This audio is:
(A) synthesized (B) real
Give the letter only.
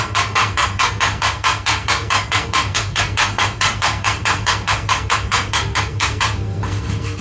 A